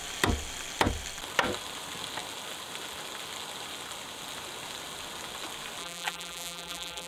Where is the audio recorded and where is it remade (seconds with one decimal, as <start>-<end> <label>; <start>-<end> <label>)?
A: 0.0-5.8 recorded; 5.8-7.1 remade